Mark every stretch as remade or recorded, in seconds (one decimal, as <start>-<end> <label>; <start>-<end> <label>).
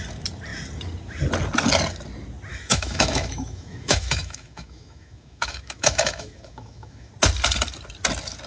0.0-2.5 recorded; 2.5-7.1 remade; 7.1-8.5 recorded